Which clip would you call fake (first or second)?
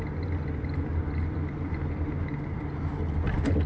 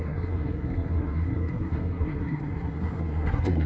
second